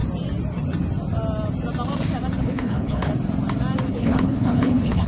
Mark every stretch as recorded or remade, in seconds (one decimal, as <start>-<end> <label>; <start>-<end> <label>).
0.0-2.4 recorded; 2.4-3.1 remade; 3.1-3.9 recorded; 3.9-5.1 remade